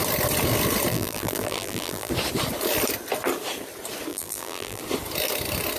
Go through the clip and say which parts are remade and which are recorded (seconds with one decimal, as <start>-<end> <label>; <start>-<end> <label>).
0.0-0.9 recorded; 0.9-2.1 remade; 2.1-4.1 recorded; 4.1-4.8 remade; 4.8-5.8 recorded

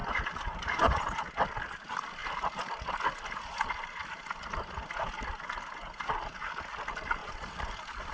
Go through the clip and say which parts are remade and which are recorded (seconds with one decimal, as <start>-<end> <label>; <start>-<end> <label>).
0.0-1.2 remade; 1.2-7.2 recorded; 7.2-8.1 remade